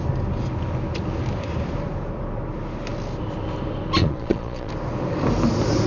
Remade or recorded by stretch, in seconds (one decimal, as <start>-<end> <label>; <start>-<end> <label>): 0.0-4.0 recorded; 4.0-4.7 remade; 4.7-5.9 recorded